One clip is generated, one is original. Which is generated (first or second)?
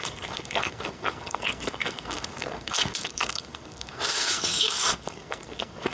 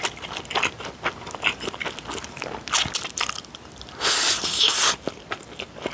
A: first